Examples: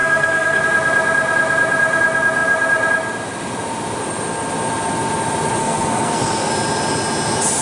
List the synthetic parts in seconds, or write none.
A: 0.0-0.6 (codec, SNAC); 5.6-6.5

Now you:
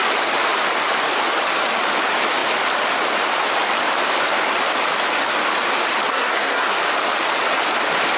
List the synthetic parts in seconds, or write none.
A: 6.1-6.8 (codec, SNAC)

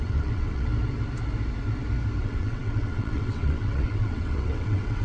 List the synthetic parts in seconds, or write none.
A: 0.0-0.7 (vocoder, WaveNeXt); 2.2-5.0

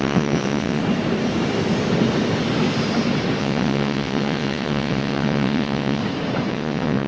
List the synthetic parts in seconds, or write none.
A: 0.0-0.8 (vocoder, WaveNeXt); 3.4-6.0; 6.5-7.1

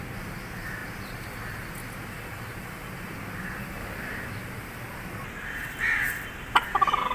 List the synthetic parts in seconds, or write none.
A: none

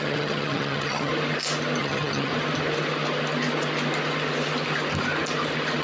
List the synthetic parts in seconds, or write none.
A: 0.0-1.1 (vocoder, HiFi-GAN); 1.8-2.3